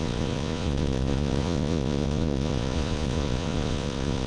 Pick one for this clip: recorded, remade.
remade